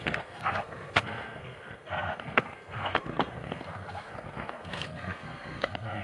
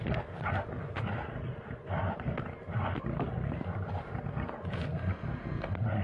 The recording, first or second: second